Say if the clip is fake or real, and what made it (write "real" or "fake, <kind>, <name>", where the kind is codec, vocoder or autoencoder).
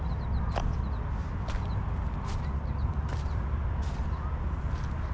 real